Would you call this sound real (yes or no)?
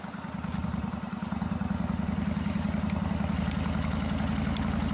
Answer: yes